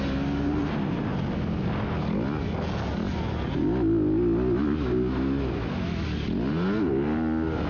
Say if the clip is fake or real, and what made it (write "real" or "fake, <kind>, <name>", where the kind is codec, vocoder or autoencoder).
real